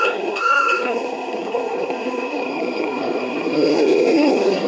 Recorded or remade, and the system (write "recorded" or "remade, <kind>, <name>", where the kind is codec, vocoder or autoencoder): remade, codec, SNAC